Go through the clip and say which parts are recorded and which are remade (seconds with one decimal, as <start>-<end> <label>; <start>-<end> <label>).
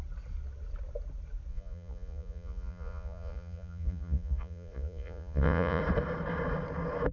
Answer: 0.0-1.5 recorded; 1.5-5.8 remade; 5.8-7.1 recorded